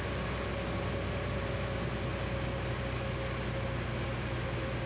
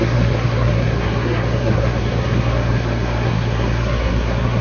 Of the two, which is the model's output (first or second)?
second